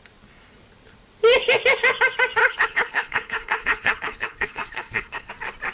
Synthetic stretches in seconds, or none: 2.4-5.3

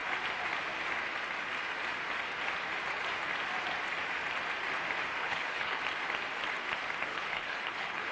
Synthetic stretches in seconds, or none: 5.2-5.8; 7.1-8.1